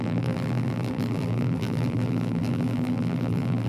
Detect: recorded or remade remade